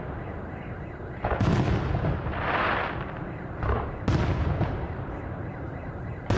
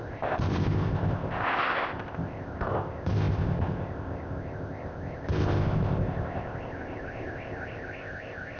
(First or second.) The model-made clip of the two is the second